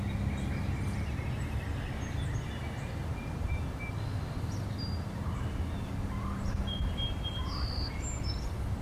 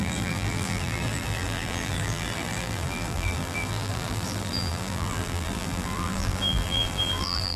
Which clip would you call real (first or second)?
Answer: first